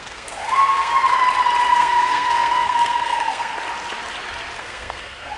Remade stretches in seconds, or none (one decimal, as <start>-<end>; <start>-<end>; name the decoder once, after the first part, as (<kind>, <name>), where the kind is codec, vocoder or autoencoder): 0.0-0.9 (codec, SNAC); 1.7-3.5; 4.6-5.4